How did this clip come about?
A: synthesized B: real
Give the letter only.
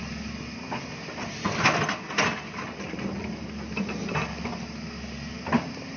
B